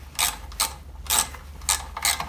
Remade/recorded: recorded